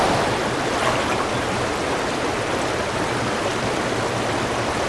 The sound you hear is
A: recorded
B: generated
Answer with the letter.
A